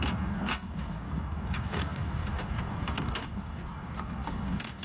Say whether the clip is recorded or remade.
remade